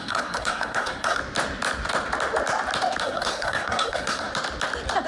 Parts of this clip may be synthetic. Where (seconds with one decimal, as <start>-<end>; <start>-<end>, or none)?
0.0-1.2; 3.0-4.3